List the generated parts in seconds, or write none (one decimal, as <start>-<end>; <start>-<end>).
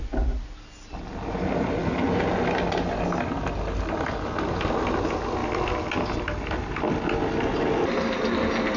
none